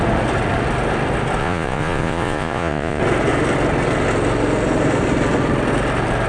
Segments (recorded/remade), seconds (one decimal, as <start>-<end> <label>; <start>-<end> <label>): 0.0-1.4 recorded; 1.4-3.0 remade; 3.0-6.3 recorded